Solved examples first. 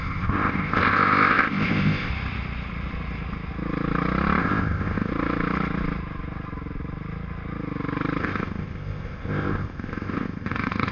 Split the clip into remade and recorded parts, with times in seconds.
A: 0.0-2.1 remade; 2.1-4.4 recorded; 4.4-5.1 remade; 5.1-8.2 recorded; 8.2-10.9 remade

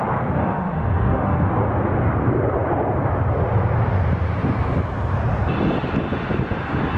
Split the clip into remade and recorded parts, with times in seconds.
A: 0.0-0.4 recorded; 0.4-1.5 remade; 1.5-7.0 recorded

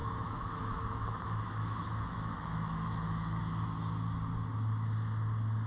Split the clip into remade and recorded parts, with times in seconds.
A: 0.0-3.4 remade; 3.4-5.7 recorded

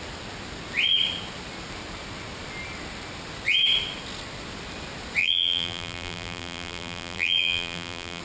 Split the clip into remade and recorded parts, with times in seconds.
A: 0.0-5.2 recorded; 5.2-8.2 remade

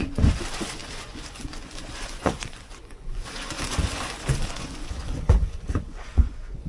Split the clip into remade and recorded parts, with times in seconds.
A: 0.0-6.7 remade

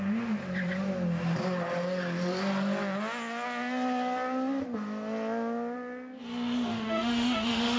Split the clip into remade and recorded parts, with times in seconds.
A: 0.0-6.7 recorded; 6.7-7.8 remade